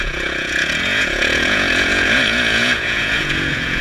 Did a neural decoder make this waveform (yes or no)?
yes